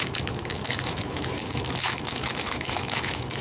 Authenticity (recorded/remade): remade